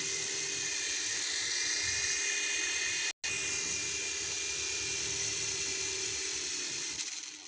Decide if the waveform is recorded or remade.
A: recorded